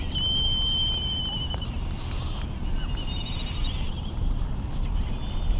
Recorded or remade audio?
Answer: recorded